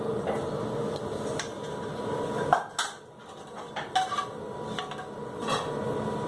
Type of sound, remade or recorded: recorded